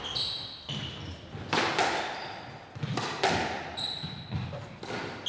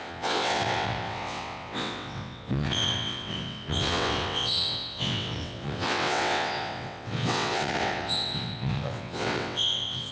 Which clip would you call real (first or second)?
first